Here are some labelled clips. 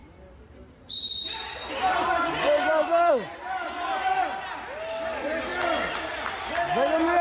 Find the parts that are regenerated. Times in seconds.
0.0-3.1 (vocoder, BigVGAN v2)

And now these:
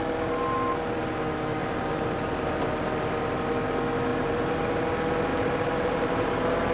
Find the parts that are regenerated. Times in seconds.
1.6-2.6 (vocoder, BigVGAN v2); 4.1-4.8; 5.3-6.3

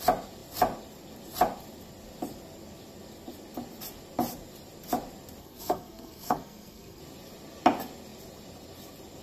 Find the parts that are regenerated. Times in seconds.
5.4-7.0 (codec, SNAC)

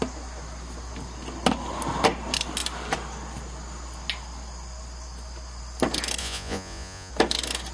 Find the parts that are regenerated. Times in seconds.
6.2-7.1 (vocoder, Vocos)

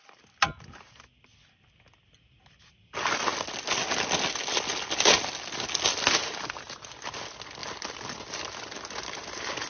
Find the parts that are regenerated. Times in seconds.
none